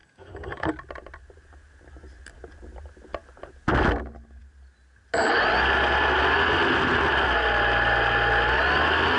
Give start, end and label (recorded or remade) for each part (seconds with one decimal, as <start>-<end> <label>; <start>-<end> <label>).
0.0-0.7 remade; 0.7-9.2 recorded

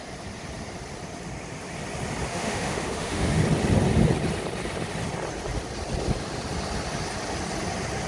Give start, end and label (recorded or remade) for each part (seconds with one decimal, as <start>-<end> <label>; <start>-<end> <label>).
0.0-2.3 recorded; 2.3-3.4 remade; 3.4-8.1 recorded